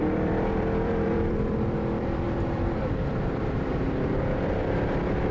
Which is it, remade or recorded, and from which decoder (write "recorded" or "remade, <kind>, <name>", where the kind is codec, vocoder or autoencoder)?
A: remade, vocoder, BigVGAN v2